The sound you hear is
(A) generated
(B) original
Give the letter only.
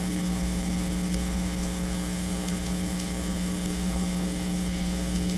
A